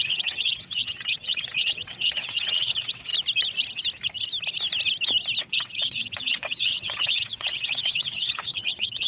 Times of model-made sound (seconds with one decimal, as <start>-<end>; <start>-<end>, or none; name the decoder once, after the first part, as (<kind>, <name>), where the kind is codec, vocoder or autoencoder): 0.0-3.1 (vocoder, WaveNeXt); 5.4-9.1